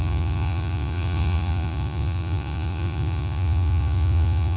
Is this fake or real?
fake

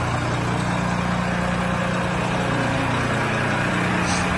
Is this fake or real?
real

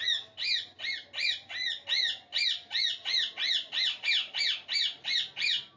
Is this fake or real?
real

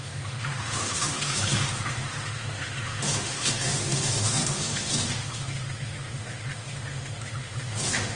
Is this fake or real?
fake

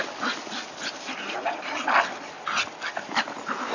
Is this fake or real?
real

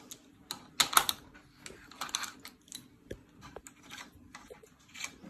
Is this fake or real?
real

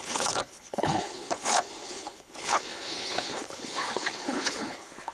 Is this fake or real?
fake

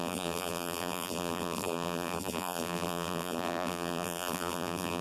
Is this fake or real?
fake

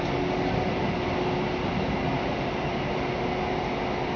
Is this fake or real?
real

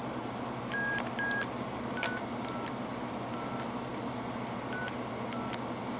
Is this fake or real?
real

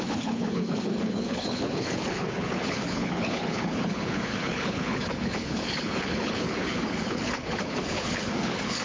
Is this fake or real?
fake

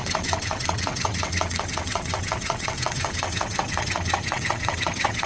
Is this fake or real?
fake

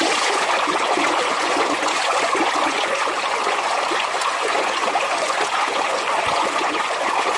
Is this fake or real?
fake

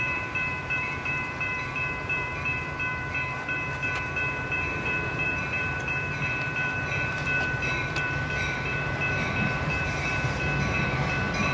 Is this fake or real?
fake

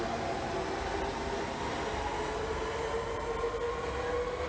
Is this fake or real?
real